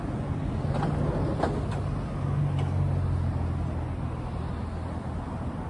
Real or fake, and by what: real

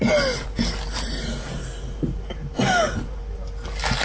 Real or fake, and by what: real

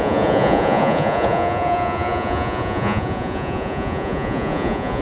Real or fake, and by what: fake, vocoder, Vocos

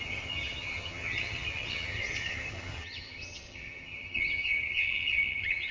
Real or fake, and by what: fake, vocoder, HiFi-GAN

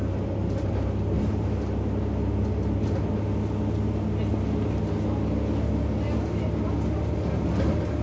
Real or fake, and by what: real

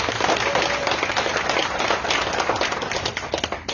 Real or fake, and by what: real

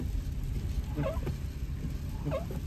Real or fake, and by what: real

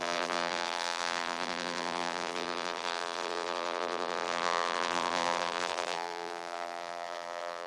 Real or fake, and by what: fake, vocoder, BigVGAN v2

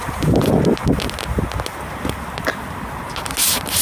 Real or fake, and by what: real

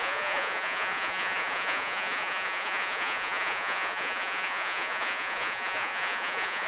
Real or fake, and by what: fake, vocoder, Vocos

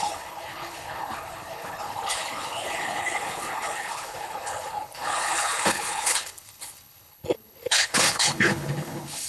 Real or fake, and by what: fake, codec, HILCodec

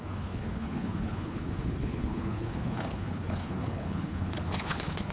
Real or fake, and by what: fake, codec, HILCodec